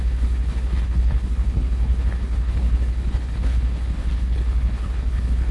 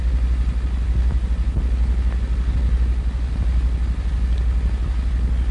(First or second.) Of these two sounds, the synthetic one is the first